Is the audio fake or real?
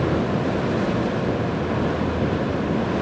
real